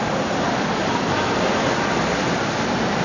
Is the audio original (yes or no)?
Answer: yes